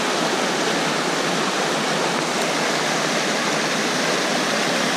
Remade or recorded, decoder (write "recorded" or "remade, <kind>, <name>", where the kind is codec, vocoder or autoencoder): recorded